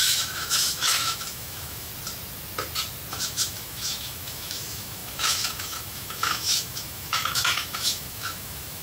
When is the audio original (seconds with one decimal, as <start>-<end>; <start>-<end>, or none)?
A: 1.9-3.1